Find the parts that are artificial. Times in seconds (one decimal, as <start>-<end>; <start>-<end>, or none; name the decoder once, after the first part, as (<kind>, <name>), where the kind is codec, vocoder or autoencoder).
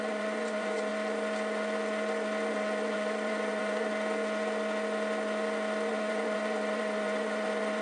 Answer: 0.0-0.9 (vocoder, Vocos); 2.5-3.9; 5.9-7.8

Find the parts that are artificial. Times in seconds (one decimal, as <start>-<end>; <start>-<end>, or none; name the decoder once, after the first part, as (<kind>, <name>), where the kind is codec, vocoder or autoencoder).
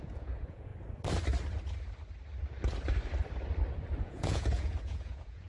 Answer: 0.0-0.7 (vocoder, Vocos); 4.0-5.5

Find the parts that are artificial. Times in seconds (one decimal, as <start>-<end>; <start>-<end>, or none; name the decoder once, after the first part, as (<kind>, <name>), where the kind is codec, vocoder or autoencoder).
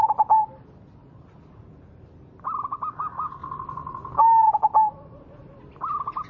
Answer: none